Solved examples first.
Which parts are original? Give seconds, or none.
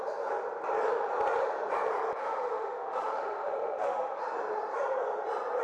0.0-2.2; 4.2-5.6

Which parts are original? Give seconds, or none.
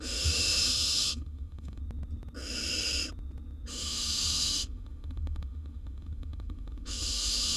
1.8-3.7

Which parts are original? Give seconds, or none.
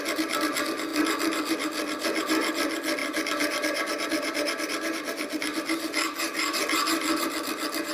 0.0-7.9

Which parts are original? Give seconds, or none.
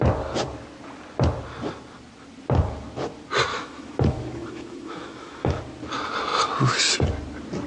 0.0-3.5; 5.6-7.7